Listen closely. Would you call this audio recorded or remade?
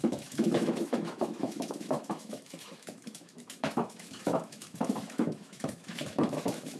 remade